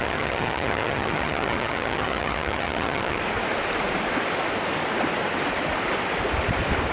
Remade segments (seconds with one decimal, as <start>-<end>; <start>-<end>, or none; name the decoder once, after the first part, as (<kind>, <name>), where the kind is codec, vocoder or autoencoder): 0.0-3.2 (vocoder, HiFi-GAN)